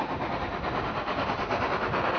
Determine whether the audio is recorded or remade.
recorded